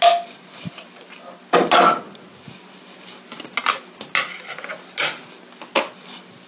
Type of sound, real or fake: real